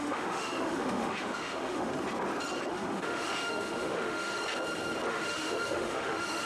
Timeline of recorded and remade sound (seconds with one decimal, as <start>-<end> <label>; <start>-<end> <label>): 0.0-1.9 remade; 1.9-2.7 recorded; 2.7-4.4 remade; 4.4-5.1 recorded; 5.1-6.5 remade

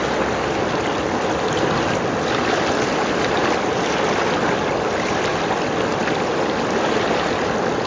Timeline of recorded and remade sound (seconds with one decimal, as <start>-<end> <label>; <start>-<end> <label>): 0.0-7.9 recorded